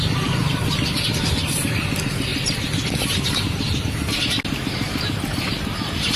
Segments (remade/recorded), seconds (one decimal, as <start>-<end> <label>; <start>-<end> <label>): 0.0-6.2 recorded